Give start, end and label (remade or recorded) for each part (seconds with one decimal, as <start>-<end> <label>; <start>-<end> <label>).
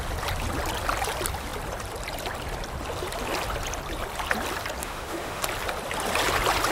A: 0.0-4.8 recorded; 4.8-5.4 remade; 5.4-6.7 recorded